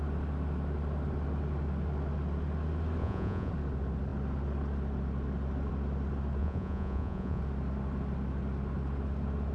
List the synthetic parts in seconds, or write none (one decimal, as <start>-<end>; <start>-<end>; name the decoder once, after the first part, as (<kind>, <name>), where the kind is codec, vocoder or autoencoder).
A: 3.0-3.5 (vocoder, Vocos); 6.4-7.4